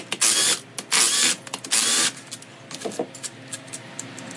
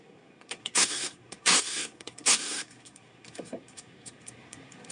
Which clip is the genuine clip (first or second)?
first